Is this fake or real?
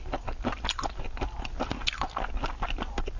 real